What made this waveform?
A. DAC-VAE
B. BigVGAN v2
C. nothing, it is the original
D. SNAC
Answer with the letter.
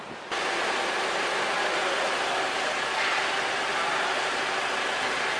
C